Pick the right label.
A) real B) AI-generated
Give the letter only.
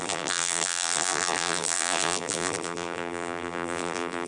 B